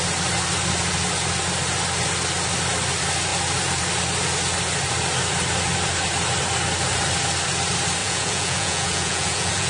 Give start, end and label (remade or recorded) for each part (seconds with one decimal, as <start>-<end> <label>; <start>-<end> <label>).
0.0-8.0 recorded; 8.0-9.7 remade